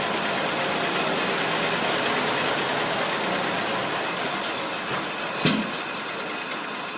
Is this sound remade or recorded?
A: recorded